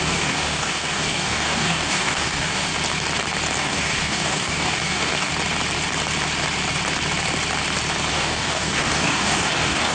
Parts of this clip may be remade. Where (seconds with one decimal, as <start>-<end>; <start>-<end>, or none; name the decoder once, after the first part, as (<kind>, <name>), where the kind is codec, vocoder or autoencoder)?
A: 0.0-2.7 (codec, DAC); 3.6-5.3; 8.1-9.9